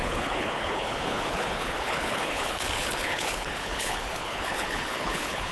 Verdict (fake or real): fake